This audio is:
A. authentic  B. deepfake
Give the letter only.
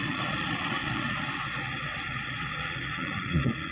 B